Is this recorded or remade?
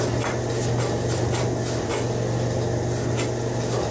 recorded